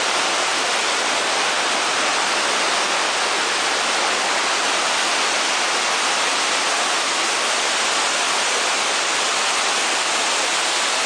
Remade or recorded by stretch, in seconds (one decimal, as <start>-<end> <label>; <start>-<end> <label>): 0.0-11.1 recorded